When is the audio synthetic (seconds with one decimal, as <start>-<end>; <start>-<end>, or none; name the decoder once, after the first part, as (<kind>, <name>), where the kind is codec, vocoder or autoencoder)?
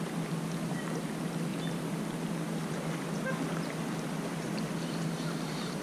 none